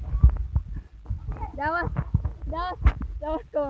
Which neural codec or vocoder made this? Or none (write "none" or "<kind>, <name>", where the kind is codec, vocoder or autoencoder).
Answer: none